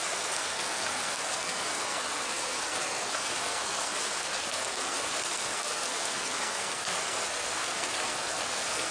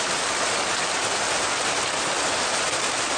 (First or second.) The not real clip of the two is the first